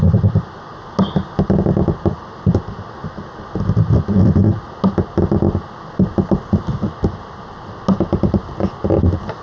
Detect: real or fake real